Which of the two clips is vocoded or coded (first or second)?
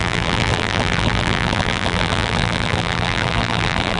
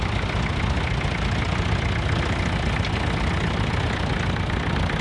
first